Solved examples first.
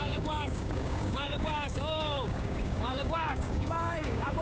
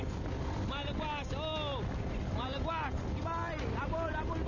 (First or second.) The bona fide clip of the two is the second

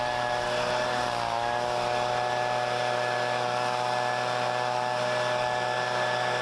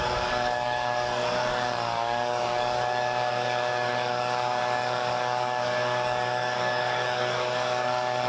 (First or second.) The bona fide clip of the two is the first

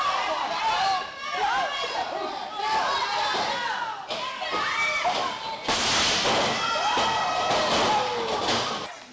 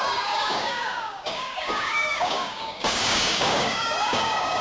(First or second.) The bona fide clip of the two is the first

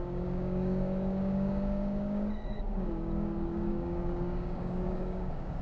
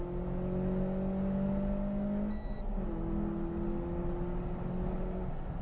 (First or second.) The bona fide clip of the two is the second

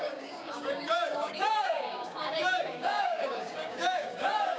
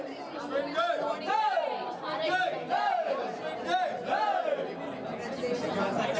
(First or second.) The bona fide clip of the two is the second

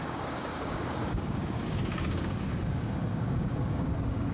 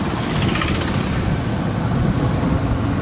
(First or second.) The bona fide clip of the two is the second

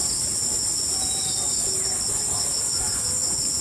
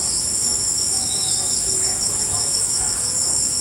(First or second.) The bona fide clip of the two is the first